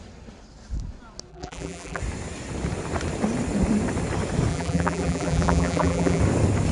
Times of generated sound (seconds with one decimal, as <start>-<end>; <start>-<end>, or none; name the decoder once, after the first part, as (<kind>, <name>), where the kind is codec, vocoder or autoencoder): 1.3-2.0 (vocoder, BigVGAN v2); 4.5-6.2